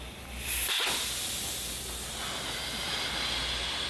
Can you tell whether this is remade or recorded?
recorded